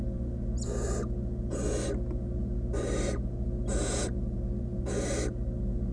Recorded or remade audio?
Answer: recorded